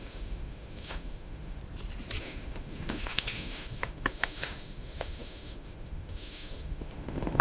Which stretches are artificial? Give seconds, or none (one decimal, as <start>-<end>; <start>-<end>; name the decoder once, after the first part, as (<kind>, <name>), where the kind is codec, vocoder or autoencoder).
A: 0.0-1.6 (autoencoder, DAC-VAE); 2.2-7.4